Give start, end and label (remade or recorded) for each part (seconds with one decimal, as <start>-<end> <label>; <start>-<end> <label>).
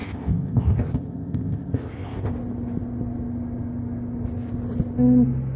0.0-2.3 remade; 2.3-5.6 recorded